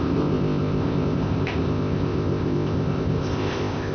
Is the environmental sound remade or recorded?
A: remade